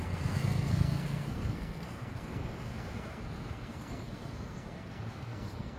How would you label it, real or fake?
fake